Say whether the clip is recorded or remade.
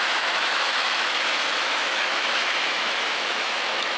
remade